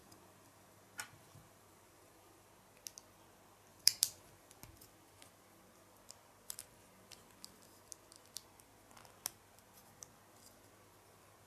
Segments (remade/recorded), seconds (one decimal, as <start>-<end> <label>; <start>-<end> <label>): 0.0-2.5 remade; 2.5-3.7 recorded; 3.7-4.6 remade; 4.6-11.5 recorded